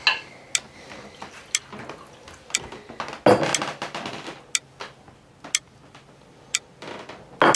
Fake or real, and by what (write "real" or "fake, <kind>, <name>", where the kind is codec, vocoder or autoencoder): real